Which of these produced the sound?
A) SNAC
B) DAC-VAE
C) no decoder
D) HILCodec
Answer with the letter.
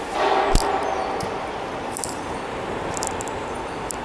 C